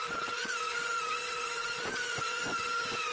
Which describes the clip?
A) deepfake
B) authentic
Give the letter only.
A